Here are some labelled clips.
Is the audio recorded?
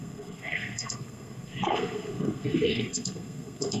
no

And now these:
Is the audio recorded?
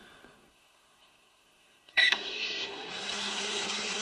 no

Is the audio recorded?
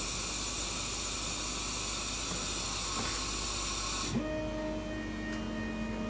yes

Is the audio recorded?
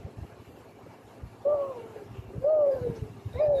no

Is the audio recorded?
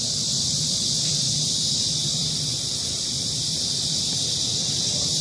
no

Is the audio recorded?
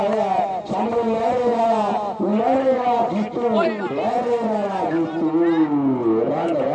yes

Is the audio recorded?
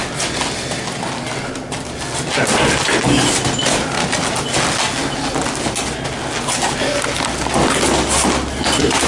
yes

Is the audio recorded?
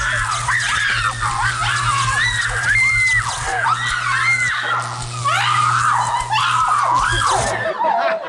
yes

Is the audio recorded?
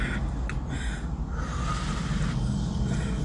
yes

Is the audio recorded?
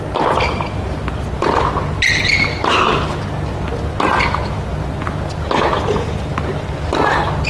yes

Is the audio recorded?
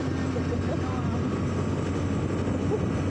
yes